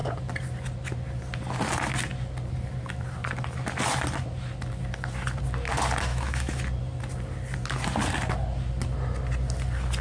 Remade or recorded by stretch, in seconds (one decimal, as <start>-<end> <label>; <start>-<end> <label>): 0.0-6.1 recorded; 6.1-6.6 remade; 6.6-10.0 recorded